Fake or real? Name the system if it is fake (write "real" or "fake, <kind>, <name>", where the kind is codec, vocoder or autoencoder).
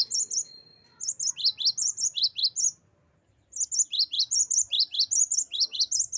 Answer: real